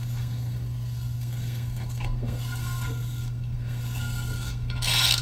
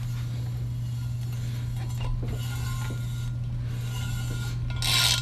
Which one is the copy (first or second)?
first